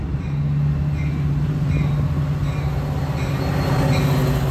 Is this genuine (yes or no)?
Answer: yes